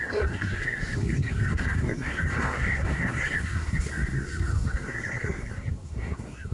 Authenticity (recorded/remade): remade